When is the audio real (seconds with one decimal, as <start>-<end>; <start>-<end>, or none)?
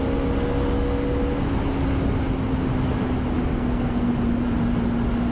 0.0-3.5; 4.1-5.3